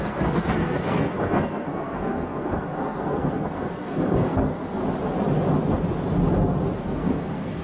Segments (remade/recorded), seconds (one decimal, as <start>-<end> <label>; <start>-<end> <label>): 0.0-4.8 remade; 4.8-6.8 recorded; 6.8-7.6 remade